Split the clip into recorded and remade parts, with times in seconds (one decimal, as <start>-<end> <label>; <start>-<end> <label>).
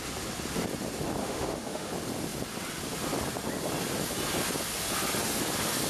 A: 0.0-1.2 recorded; 1.2-1.9 remade; 1.9-5.9 recorded